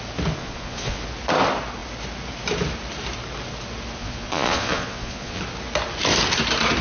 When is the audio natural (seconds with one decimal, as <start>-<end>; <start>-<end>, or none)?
0.0-0.4; 1.0-4.0; 5.4-6.8